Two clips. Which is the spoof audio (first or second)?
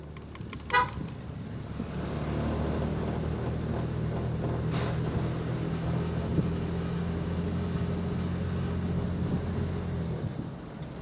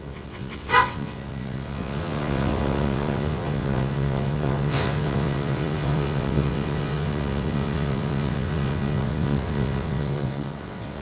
second